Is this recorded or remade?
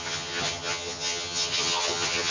remade